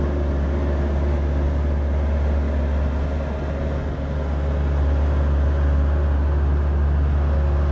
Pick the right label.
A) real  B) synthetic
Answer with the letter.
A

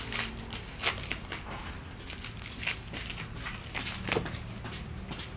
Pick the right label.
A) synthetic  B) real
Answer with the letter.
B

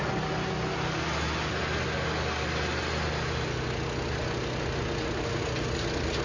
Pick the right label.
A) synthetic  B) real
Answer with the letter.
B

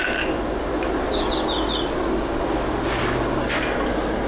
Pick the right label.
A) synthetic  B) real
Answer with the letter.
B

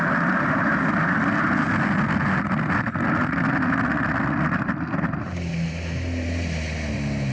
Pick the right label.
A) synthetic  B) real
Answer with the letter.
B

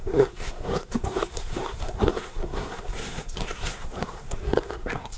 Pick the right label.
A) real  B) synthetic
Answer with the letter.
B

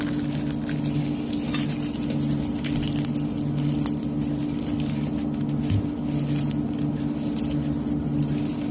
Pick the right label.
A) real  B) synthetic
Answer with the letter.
A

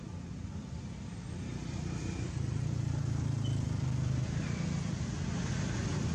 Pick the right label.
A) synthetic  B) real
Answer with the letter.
B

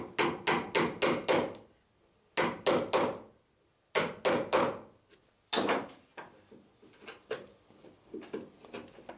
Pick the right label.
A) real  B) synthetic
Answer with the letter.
A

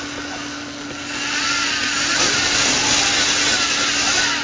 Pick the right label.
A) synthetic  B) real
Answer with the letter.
B